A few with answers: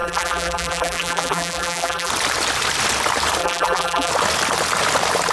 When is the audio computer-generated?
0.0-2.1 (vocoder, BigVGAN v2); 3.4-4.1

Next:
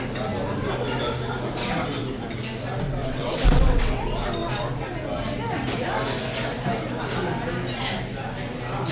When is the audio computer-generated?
3.0-4.0 (vocoder, WaveNeXt)

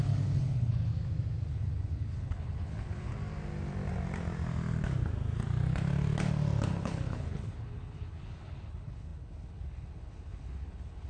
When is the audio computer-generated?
0.0-0.9 (codec, HILCodec); 1.5-3.1; 6.7-11.1

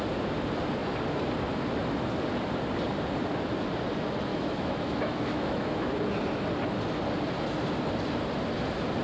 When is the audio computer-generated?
4.3-5.9 (autoencoder, DAC-VAE)

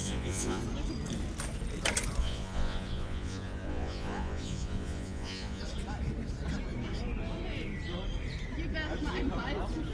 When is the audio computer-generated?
0.0-0.6 (vocoder, Vocos); 2.2-5.6

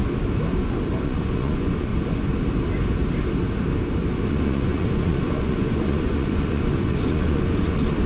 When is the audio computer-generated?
1.0-1.9 (vocoder, Vocos); 4.3-8.1

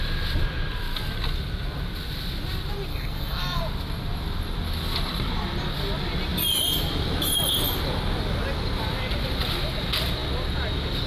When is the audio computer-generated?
2.9-3.6 (codec, SNAC)

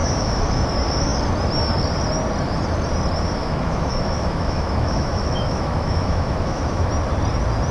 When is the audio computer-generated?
0.0-0.6 (autoencoder, DAC-VAE); 3.4-6.9